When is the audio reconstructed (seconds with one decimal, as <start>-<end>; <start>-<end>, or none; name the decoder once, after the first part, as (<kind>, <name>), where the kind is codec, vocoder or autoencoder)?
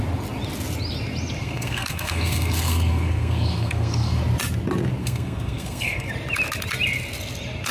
1.4-4.2 (codec, SNAC); 5.0-6.1